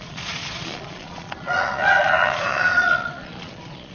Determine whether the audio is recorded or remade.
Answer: remade